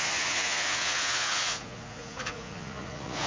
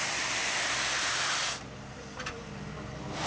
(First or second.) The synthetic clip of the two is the first